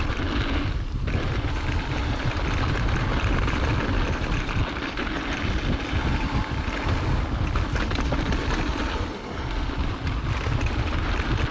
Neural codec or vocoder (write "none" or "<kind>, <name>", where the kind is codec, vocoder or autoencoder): none